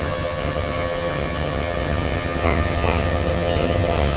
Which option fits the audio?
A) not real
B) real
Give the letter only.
A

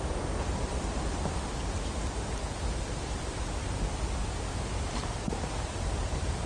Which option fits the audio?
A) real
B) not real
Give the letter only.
A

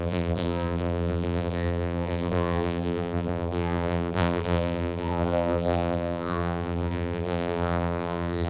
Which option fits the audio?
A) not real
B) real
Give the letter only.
A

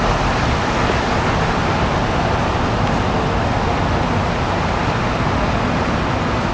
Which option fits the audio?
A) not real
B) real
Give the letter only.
B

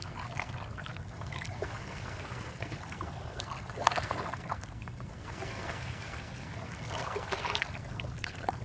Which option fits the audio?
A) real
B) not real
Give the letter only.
B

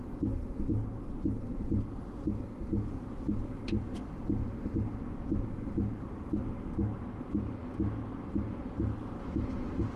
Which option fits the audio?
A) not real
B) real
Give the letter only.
B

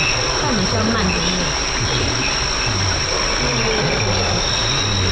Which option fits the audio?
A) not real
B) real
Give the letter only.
B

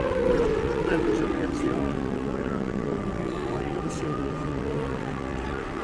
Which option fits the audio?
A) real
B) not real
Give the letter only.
B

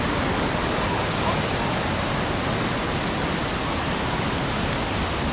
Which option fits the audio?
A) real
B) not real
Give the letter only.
A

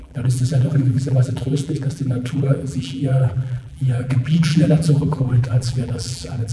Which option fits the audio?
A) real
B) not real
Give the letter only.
B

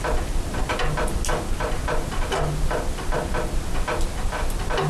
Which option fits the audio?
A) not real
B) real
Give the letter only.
B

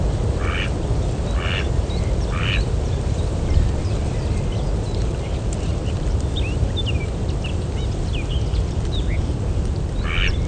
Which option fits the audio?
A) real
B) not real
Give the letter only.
A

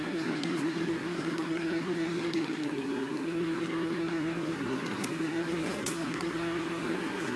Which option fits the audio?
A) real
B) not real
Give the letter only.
B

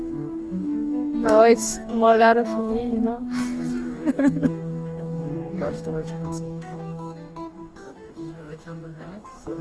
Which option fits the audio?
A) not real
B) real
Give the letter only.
A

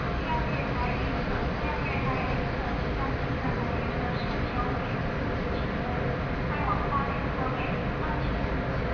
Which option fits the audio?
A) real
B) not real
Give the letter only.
A